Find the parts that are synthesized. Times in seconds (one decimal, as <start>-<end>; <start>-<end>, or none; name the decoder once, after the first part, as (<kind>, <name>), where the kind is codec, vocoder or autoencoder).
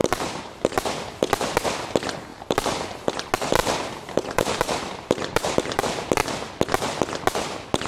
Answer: 0.0-0.9 (vocoder, BigVGAN v2); 2.3-3.1; 3.6-5.8